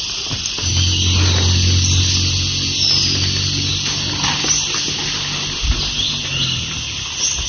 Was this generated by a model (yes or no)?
no